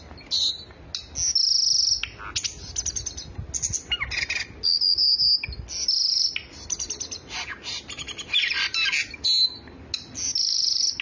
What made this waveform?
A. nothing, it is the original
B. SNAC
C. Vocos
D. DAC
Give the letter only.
A